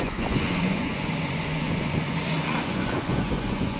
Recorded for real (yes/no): no